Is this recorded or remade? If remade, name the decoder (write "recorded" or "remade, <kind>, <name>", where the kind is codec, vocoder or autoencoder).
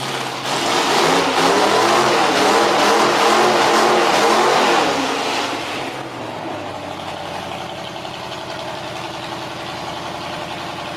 recorded